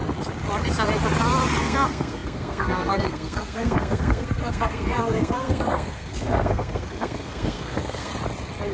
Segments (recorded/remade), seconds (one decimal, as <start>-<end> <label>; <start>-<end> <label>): 0.0-1.6 recorded; 1.6-8.1 remade; 8.1-8.7 recorded